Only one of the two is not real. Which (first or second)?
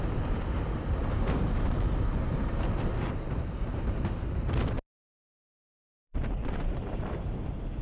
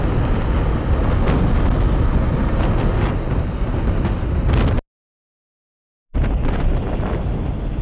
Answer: first